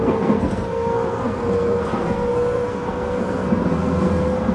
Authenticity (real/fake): fake